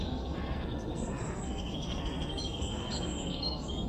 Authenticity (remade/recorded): remade